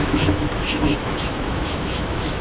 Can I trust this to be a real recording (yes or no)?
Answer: no